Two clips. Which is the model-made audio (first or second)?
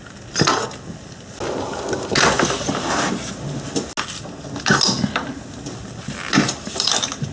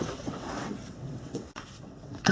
second